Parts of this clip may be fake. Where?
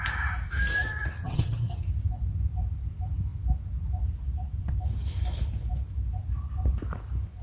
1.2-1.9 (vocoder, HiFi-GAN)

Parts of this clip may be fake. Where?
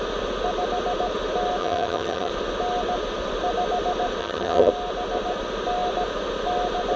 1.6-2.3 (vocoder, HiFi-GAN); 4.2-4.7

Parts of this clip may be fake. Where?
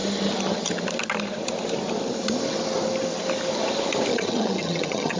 4.1-5.2 (vocoder, HiFi-GAN)